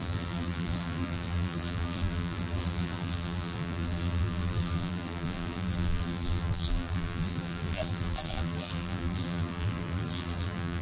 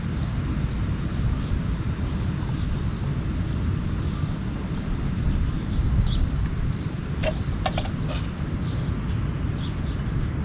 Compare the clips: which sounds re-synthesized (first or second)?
first